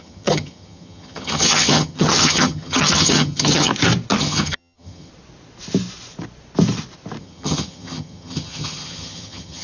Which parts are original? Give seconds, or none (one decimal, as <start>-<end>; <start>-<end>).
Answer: 3.7-4.2; 5.1-7.2